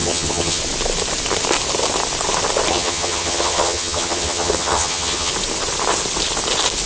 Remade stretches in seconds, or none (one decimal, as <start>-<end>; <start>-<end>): 0.0-0.6; 2.7-5.3